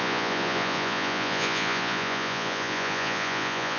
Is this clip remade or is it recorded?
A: remade